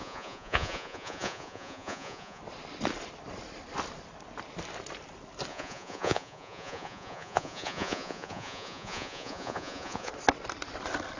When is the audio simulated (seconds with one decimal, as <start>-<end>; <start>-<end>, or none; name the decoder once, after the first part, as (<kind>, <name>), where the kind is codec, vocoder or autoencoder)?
0.0-2.4 (vocoder, Vocos); 5.5-10.1